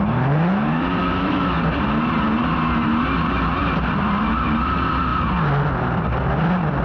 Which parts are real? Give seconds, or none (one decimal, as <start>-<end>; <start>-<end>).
0.0-1.0; 1.6-6.8